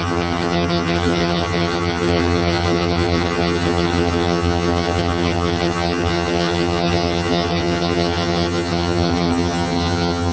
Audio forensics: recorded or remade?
remade